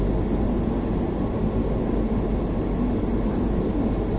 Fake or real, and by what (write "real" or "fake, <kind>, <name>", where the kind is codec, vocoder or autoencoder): real